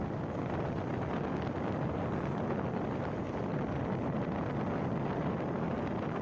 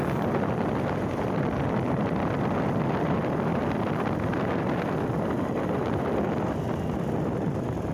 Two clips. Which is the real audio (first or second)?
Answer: first